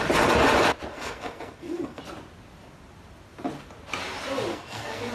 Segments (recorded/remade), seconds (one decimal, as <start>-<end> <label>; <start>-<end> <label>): 0.0-0.9 recorded; 0.9-2.0 remade; 2.0-4.5 recorded; 4.5-5.1 remade